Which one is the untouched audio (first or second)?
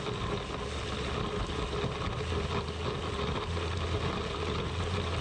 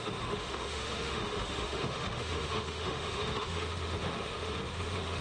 first